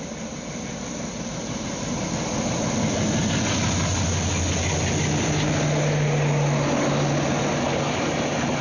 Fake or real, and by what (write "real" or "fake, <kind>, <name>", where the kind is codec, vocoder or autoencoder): real